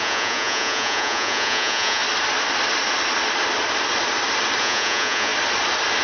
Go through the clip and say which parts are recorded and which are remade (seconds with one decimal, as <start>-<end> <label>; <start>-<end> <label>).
0.0-2.0 remade; 2.0-4.6 recorded; 4.6-5.3 remade; 5.3-6.0 recorded